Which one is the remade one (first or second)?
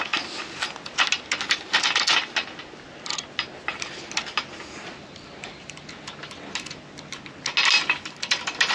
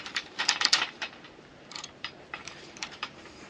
second